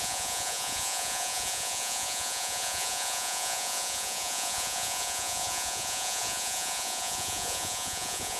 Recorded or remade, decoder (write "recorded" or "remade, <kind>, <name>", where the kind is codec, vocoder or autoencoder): remade, vocoder, Vocos